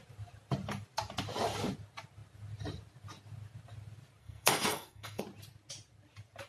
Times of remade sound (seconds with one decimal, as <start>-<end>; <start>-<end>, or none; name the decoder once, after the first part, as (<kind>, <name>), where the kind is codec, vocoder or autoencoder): 4.2-5.2 (codec, SNAC)